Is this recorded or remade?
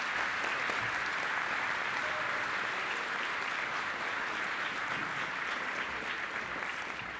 recorded